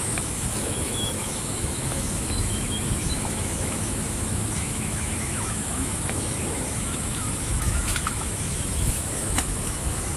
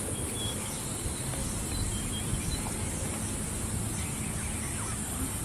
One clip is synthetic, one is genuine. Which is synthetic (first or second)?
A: first